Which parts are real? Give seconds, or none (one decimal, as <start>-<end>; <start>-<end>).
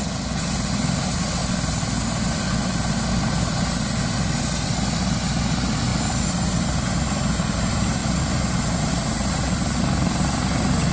1.4-5.5